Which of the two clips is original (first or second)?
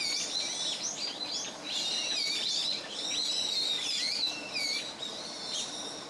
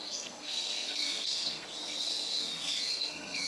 first